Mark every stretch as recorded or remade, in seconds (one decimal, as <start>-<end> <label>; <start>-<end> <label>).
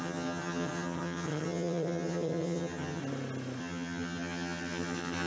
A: 0.0-3.0 remade; 3.0-3.6 recorded; 3.6-5.3 remade